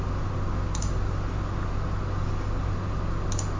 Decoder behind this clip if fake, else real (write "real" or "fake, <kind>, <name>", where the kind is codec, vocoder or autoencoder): real